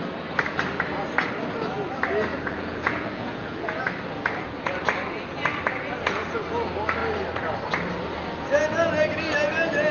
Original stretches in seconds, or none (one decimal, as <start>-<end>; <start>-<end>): 0.0-2.3; 3.8-9.9